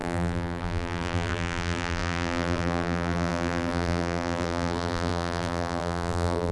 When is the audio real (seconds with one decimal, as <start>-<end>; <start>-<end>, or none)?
none